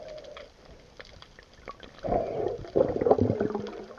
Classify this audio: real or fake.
real